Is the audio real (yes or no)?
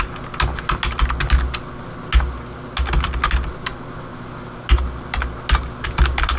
yes